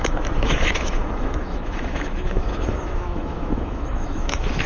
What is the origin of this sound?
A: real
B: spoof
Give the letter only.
B